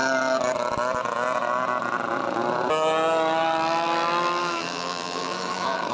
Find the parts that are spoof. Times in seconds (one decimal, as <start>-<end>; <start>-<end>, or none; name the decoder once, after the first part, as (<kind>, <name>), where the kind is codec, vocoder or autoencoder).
4.4-5.9 (autoencoder, DAC-VAE)